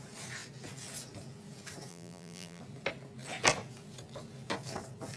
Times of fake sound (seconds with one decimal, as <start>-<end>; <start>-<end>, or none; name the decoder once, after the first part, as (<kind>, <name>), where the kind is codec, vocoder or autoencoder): 1.9-2.6 (vocoder, BigVGAN v2)